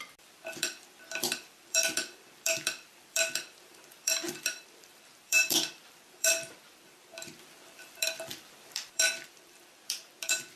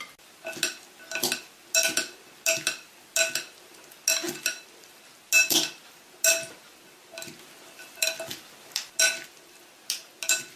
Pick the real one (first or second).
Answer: second